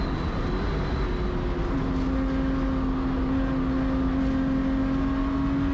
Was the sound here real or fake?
real